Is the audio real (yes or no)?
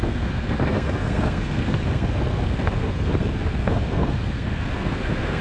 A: no